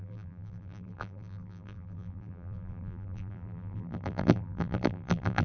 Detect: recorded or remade remade